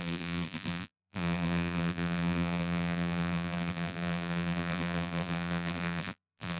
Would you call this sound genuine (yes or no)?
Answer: no